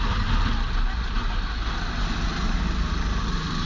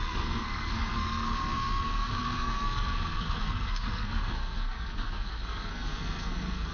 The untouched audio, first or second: first